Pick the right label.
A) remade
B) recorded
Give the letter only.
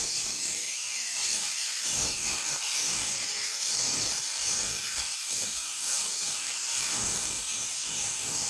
A